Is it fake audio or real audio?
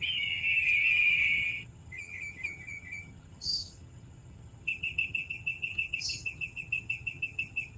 fake